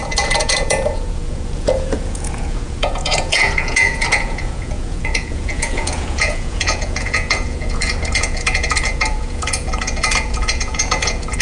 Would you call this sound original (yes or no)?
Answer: no